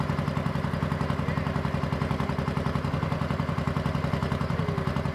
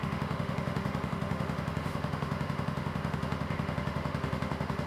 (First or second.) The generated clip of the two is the second